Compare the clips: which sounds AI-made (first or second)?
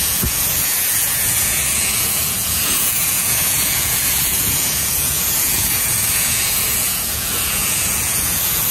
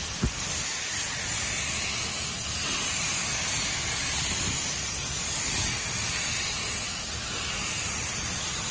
first